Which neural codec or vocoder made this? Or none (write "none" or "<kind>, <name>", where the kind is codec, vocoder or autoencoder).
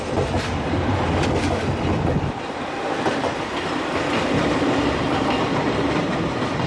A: vocoder, BigVGAN v2